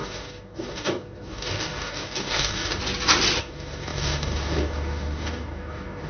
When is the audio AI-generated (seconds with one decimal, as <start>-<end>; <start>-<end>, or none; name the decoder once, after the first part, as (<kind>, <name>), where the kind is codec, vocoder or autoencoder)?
0.0-2.8 (codec, DAC); 3.4-6.1